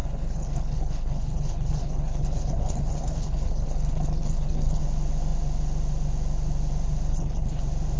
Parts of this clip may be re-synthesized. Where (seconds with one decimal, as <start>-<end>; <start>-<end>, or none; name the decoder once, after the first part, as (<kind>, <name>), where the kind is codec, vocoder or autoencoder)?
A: 0.0-4.8 (codec, HILCodec); 7.1-7.6